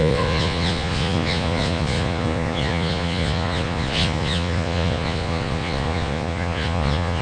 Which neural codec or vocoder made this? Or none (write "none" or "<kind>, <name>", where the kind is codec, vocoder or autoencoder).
vocoder, Vocos